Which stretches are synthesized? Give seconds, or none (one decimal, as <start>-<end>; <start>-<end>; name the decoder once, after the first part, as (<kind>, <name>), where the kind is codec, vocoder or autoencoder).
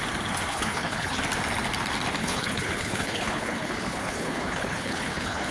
0.5-1.2 (codec, HILCodec); 2.2-5.5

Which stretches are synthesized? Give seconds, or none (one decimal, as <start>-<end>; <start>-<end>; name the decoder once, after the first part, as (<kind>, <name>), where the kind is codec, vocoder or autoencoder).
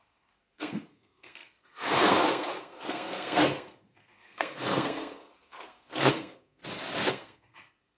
0.0-6.6 (codec, SNAC); 7.1-8.0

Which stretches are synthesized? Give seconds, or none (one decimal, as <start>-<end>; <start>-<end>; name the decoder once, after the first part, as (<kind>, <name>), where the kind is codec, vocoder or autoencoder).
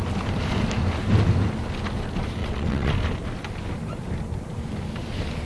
2.4-2.9 (vocoder, WaveNeXt)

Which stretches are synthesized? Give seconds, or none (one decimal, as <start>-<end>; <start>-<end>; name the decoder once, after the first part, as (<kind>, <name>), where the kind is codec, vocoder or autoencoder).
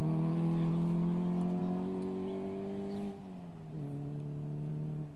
none